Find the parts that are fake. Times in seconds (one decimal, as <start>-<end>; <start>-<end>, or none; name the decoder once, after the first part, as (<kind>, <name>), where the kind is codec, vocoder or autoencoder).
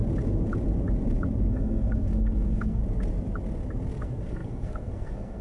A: 1.5-2.8 (codec, SNAC); 4.0-5.4